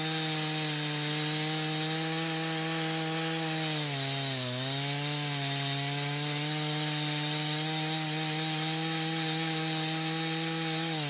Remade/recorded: recorded